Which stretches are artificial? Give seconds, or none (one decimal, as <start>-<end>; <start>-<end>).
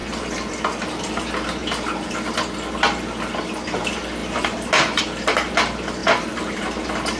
0.0-1.1; 4.2-5.0; 6.0-6.8